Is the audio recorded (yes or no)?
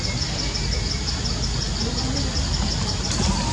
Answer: yes